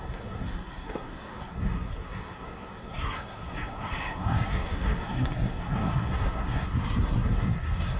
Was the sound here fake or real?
fake